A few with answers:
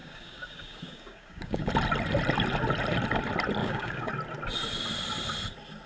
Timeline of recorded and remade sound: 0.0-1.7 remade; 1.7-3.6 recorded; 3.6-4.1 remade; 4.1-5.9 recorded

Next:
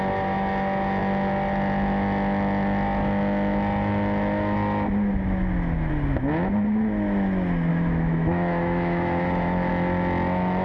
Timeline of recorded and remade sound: 0.0-7.7 recorded; 7.7-9.7 remade; 9.7-10.6 recorded

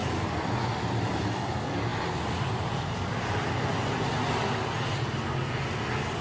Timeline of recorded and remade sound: 0.0-6.2 recorded

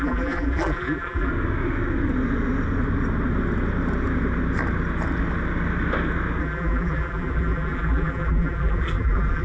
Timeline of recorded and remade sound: 0.0-1.3 remade; 1.3-6.4 recorded; 6.4-9.4 remade

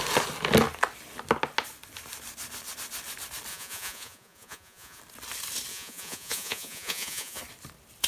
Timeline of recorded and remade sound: 0.0-3.5 recorded; 3.5-5.0 remade; 5.0-5.7 recorded; 5.7-7.4 remade; 7.4-8.1 recorded